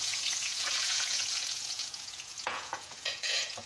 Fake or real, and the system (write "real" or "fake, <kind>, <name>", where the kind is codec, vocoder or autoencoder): fake, vocoder, Vocos